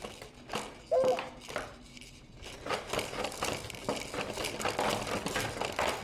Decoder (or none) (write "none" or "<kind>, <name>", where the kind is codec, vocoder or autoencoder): none